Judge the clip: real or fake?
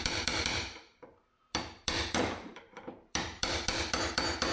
fake